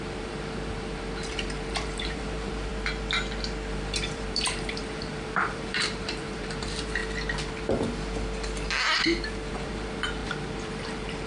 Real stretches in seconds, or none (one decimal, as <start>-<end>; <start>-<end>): 2.7-3.7; 7.0-9.5